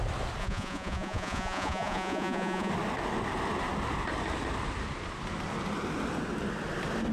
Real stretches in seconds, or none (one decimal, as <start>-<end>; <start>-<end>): 0.0-0.4; 2.7-7.1